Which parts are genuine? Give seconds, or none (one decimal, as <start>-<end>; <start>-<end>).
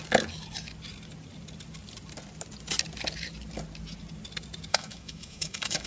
0.0-4.7